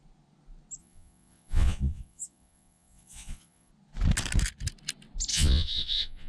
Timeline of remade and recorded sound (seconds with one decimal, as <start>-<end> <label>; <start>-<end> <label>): 0.0-0.8 recorded; 0.8-3.7 remade; 3.7-5.3 recorded; 5.3-6.3 remade